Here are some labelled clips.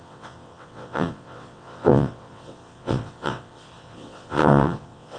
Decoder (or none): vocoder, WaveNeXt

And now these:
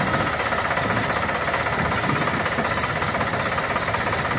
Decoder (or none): none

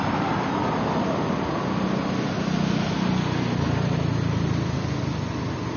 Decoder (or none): none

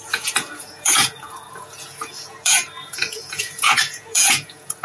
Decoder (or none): vocoder, Vocos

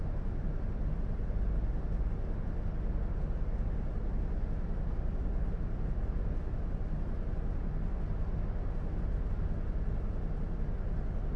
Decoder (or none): none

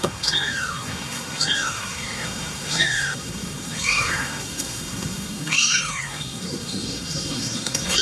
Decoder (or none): codec, SNAC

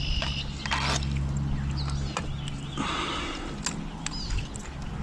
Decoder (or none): none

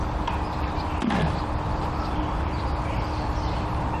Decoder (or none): none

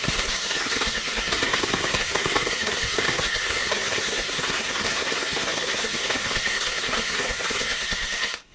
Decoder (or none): codec, SNAC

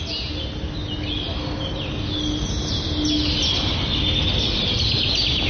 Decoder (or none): none